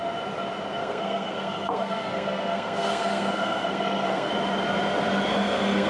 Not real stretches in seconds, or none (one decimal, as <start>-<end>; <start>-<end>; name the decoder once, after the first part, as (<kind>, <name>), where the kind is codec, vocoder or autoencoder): 0.8-4.3 (codec, SNAC); 5.3-5.9